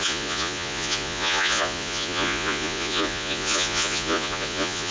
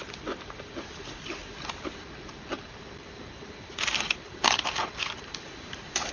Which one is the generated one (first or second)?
first